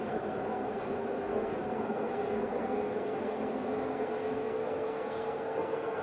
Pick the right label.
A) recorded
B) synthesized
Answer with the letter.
B